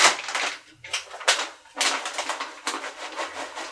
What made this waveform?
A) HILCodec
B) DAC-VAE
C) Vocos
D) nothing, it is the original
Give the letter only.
D